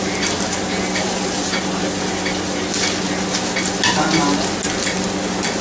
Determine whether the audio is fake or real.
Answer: real